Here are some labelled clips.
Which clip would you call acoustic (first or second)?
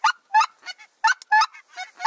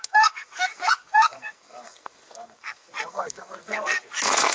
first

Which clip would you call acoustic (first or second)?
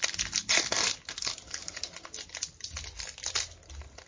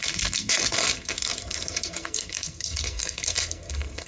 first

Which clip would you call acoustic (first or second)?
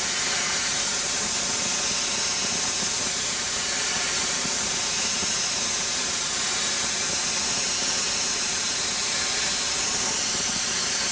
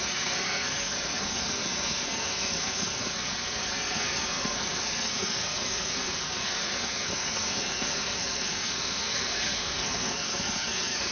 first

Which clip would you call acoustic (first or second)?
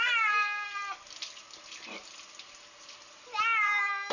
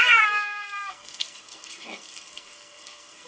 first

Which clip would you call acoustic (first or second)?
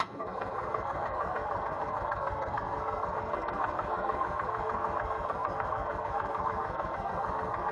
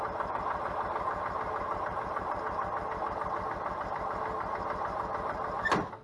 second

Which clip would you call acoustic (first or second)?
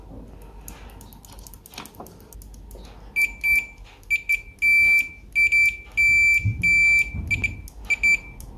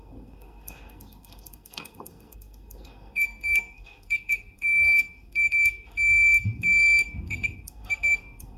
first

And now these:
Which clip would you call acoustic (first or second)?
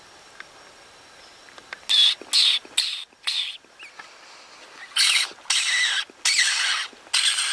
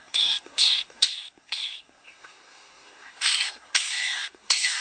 first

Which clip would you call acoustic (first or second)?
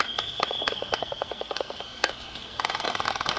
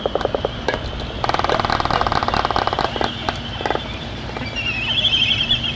second